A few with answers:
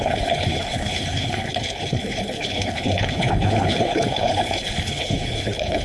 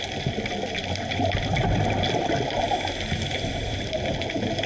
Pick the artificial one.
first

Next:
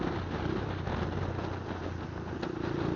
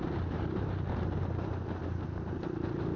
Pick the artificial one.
second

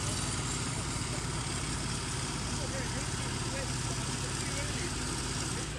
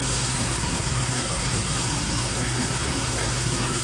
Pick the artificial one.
second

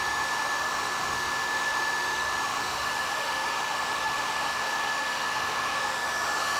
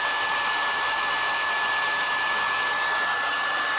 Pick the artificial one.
first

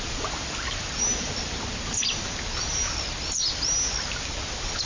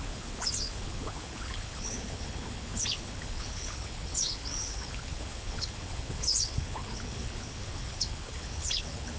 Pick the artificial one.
second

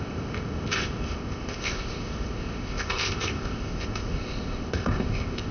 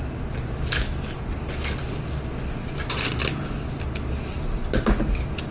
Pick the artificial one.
first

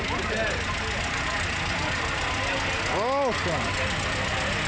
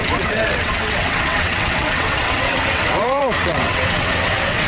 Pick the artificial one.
second